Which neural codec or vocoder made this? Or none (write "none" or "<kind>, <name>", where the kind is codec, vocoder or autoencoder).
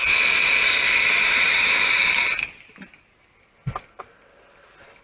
none